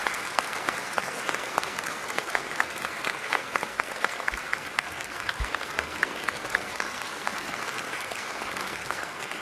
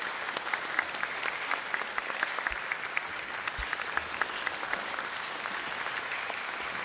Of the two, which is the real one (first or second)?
second